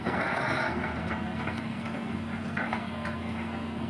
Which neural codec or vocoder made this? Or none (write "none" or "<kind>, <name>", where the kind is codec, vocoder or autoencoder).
codec, SNAC